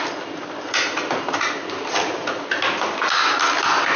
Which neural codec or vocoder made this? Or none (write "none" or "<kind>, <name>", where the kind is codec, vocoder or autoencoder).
none